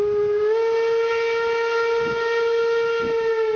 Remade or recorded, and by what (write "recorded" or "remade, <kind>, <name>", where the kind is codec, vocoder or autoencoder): recorded